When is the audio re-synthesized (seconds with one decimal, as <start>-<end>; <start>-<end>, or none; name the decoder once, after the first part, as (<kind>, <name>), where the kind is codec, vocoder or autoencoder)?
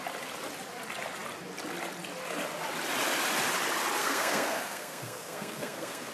4.0-6.1 (codec, SNAC)